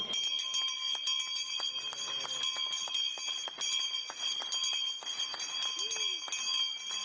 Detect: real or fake real